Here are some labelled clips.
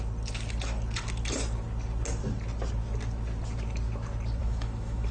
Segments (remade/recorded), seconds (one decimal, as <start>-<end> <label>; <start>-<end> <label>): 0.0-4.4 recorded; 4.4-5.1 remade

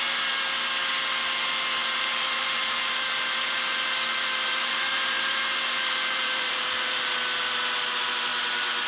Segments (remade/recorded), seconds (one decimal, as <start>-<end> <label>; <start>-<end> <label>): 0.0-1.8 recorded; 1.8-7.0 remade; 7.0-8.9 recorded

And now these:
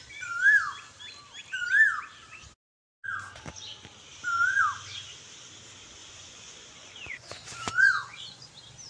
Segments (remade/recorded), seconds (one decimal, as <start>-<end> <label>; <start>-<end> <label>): 0.0-6.0 recorded; 6.0-8.5 remade; 8.5-8.9 recorded